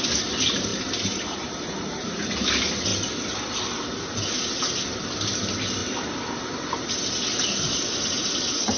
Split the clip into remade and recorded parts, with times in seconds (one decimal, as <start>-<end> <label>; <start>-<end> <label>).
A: 0.0-0.7 recorded; 0.7-2.2 remade; 2.2-8.8 recorded